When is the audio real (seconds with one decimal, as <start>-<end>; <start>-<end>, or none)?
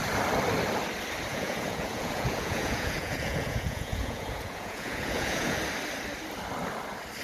0.0-1.3; 5.6-7.2